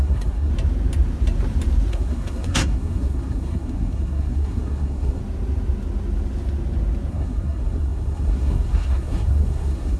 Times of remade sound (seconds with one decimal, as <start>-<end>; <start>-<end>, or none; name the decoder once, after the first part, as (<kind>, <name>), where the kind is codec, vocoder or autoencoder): 0.0-0.5 (codec, SNAC); 1.9-5.2; 7.1-10.0